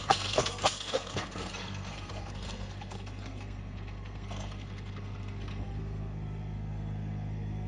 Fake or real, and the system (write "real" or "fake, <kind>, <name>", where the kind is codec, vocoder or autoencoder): fake, codec, SNAC